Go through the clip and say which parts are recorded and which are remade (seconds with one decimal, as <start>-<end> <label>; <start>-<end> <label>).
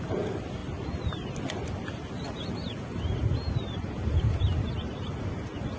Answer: 0.0-5.8 recorded